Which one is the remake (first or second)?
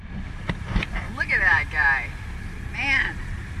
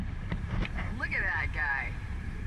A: second